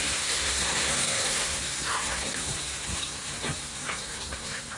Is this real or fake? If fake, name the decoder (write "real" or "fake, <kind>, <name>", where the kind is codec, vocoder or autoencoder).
fake, codec, SNAC